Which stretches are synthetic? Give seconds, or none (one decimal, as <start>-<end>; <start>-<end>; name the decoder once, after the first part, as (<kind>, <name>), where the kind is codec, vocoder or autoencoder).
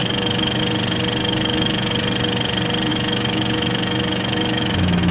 0.0-0.6 (autoencoder, DAC-VAE); 1.2-1.9; 2.9-5.1